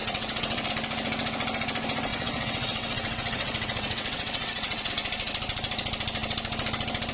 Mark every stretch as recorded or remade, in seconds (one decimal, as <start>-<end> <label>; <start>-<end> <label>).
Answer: 0.0-0.7 remade; 0.7-2.1 recorded; 2.1-4.9 remade; 4.9-7.1 recorded